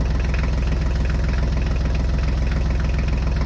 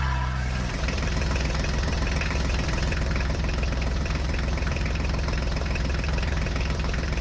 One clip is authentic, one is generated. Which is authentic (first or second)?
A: first